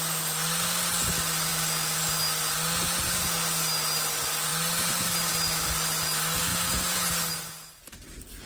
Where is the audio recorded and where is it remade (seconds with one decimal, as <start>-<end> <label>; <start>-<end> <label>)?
0.0-6.5 recorded; 6.5-7.1 remade; 7.1-8.5 recorded